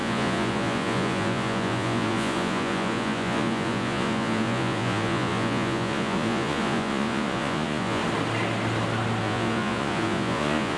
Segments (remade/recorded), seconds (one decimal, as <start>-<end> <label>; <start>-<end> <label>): 0.0-8.0 remade; 8.0-9.2 recorded; 9.2-10.8 remade